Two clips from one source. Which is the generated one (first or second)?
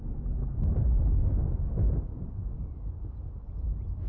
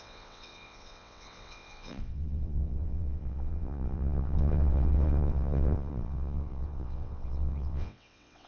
second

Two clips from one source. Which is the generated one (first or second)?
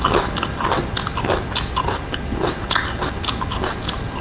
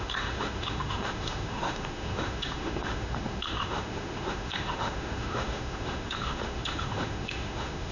second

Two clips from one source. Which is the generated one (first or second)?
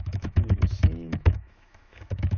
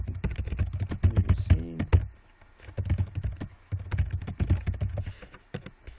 first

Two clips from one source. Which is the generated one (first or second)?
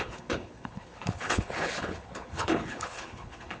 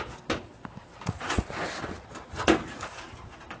first